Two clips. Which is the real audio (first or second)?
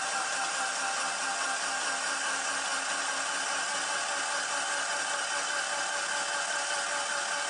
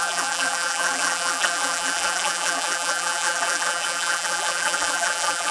first